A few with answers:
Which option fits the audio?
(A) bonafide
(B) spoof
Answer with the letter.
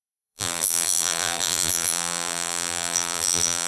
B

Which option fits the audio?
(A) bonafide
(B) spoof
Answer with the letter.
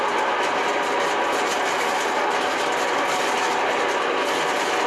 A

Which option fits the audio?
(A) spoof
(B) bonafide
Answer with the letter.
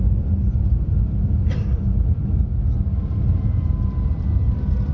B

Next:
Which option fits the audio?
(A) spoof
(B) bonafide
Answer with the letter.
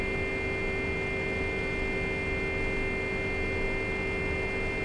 B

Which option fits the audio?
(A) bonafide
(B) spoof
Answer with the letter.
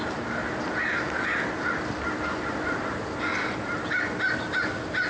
A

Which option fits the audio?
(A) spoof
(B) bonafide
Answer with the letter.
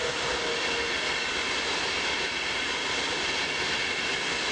B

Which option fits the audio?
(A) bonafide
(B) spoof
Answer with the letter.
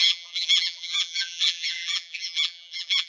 B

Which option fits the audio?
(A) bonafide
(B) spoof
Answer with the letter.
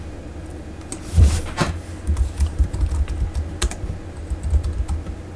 A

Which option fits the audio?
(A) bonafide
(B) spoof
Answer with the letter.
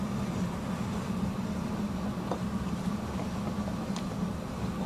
A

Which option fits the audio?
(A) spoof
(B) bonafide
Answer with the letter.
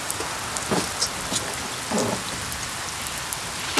B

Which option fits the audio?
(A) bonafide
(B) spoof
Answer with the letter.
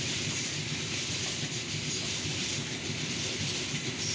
A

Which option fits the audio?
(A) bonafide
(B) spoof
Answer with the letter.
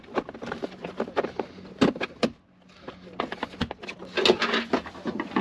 A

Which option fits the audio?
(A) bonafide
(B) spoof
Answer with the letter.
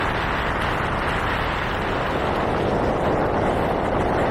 A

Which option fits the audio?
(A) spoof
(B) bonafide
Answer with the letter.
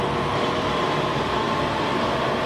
B